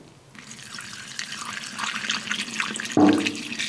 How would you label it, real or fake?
real